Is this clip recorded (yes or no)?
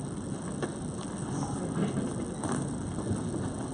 yes